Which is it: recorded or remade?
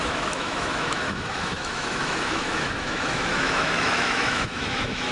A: remade